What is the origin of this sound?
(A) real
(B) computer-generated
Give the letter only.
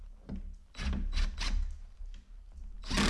A